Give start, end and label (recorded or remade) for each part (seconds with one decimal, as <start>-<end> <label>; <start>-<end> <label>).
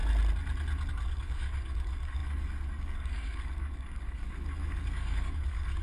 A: 0.0-0.9 recorded; 0.9-5.8 remade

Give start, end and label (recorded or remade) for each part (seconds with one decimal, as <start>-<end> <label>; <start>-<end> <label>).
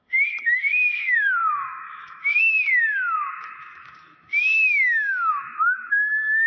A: 0.0-6.5 remade